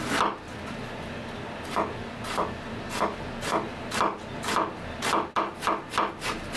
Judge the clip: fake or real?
real